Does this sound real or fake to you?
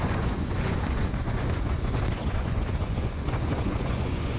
fake